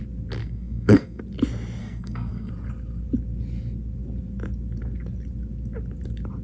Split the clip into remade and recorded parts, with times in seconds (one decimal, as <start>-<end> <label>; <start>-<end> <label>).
0.0-0.4 recorded; 0.4-1.2 remade; 1.2-1.8 recorded; 1.8-2.5 remade; 2.5-6.4 recorded